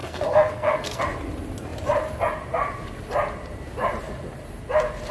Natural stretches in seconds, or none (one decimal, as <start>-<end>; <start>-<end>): 1.0-5.1